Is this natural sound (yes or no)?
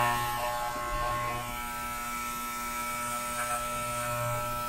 no